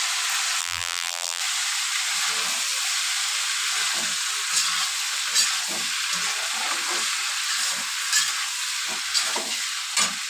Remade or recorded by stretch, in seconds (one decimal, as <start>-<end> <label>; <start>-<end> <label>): 0.0-0.6 recorded; 0.6-1.4 remade; 1.4-10.3 recorded